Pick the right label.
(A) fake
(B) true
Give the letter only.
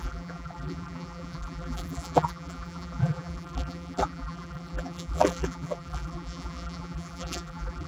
A